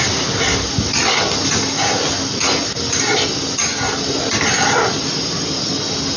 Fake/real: real